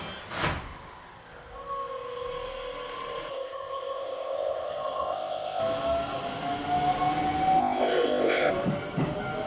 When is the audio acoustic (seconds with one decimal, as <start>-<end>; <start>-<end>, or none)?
0.0-3.3; 5.6-7.6; 8.5-9.5